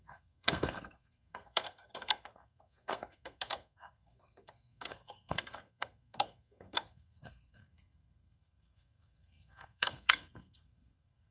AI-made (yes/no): yes